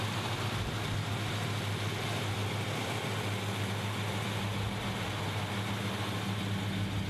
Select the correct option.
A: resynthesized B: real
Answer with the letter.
B